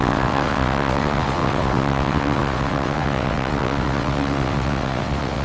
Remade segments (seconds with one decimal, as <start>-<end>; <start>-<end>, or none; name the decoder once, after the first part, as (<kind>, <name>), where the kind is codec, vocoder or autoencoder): 0.0-5.4 (vocoder, WaveNeXt)